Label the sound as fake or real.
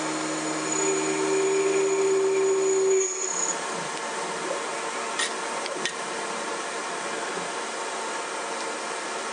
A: real